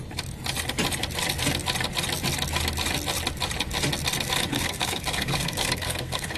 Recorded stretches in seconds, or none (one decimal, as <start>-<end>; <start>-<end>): 0.0-4.5